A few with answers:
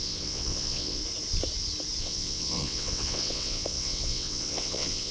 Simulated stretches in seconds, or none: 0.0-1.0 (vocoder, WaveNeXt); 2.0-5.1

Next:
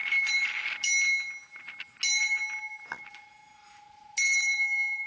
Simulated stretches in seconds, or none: none

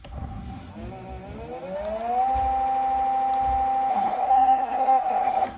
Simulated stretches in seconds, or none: 0.0-0.7 (codec, SNAC); 3.9-5.6